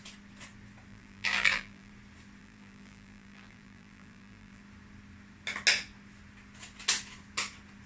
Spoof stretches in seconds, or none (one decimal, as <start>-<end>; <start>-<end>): 0.9-1.9; 2.4-4.6